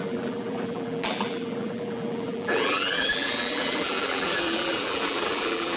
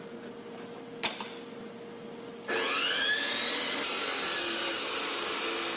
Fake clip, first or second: first